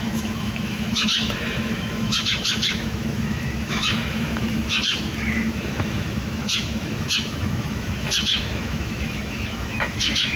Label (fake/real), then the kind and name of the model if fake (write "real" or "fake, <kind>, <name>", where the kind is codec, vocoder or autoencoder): fake, autoencoder, DAC-VAE